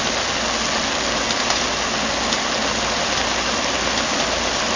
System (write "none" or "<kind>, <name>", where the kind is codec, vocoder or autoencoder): none